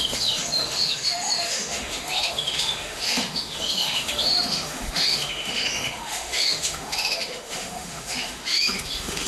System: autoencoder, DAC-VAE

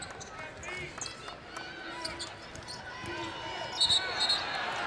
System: none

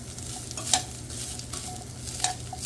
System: none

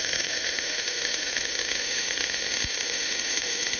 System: autoencoder, DAC-VAE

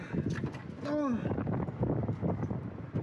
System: none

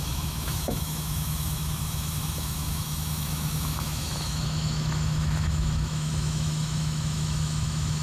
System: autoencoder, DAC-VAE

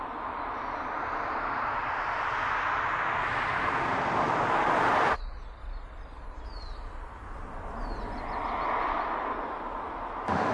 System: none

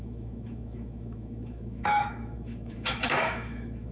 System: autoencoder, DAC-VAE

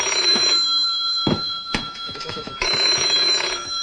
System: autoencoder, DAC-VAE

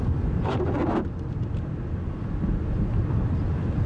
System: none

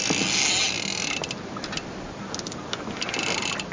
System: none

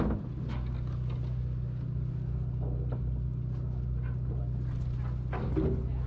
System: none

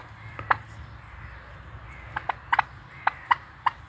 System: none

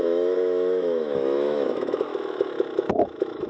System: autoencoder, DAC-VAE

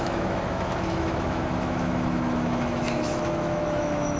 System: autoencoder, DAC-VAE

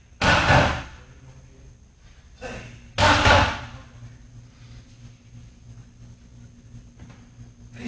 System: none